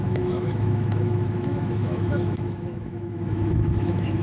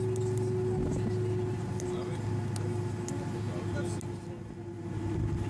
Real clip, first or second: second